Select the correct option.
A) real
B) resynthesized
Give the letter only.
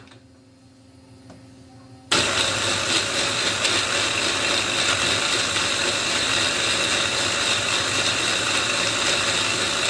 A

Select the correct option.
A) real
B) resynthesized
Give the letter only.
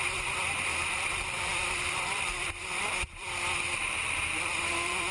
B